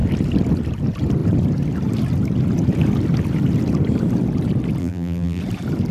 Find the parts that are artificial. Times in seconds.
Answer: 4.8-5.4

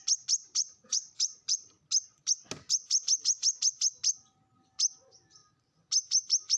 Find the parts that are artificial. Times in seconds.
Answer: 0.4-1.8

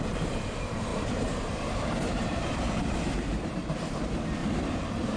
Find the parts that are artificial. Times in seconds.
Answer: 0.9-4.0; 4.4-5.2

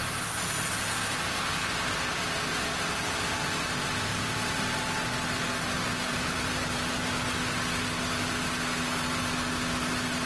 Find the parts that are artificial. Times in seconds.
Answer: 4.1-4.7; 6.1-6.6